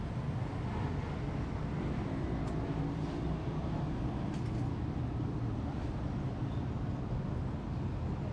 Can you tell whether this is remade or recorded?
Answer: recorded